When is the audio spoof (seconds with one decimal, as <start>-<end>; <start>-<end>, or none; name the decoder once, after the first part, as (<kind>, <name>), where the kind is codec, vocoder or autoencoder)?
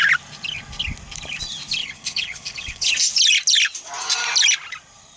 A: 1.8-2.9 (codec, HILCodec)